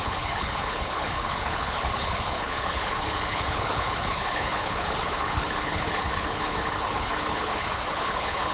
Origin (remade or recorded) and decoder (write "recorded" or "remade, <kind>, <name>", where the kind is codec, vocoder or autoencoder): remade, codec, HILCodec